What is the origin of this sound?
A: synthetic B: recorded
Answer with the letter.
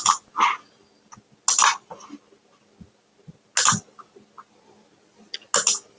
B